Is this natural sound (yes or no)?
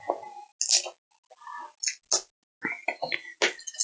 yes